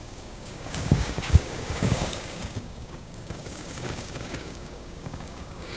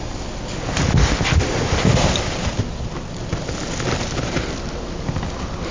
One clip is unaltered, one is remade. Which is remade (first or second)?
first